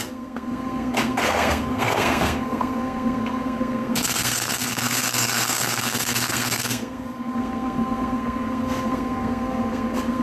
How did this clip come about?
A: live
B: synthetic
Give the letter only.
B